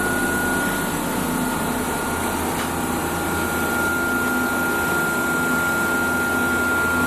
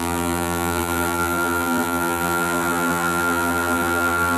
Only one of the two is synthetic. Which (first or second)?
second